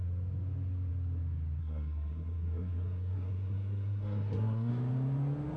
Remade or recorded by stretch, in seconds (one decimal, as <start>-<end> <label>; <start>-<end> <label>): 0.0-1.6 recorded; 1.6-4.7 remade; 4.7-5.6 recorded